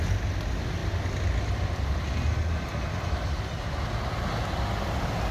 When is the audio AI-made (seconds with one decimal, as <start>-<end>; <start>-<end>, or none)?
0.8-4.0